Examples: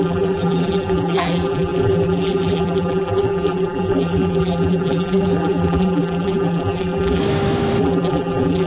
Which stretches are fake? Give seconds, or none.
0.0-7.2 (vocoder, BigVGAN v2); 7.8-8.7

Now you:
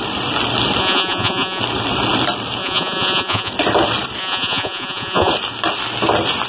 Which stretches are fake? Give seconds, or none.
0.8-1.6 (vocoder, Vocos); 2.6-3.5; 4.2-5.3

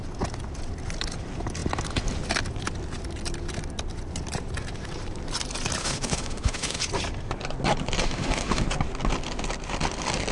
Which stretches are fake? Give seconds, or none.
5.8-6.8 (autoencoder, DAC-VAE); 8.0-8.6

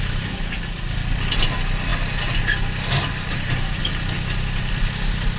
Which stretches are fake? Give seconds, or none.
none

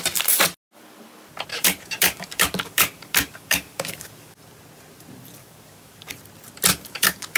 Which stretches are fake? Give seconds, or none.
1.5-4.4 (codec, DAC); 5.4-6.1; 6.7-7.4